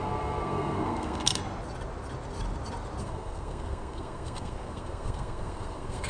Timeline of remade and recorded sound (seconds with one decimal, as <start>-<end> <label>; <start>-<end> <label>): 0.0-1.4 remade; 1.4-3.0 recorded; 3.0-6.1 remade